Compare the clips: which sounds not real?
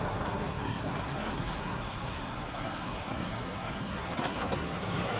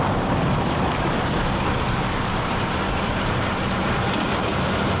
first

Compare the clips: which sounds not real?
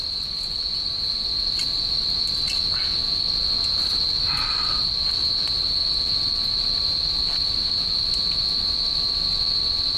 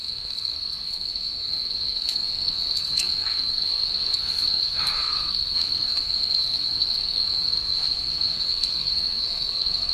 second